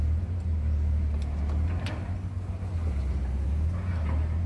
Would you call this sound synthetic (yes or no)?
no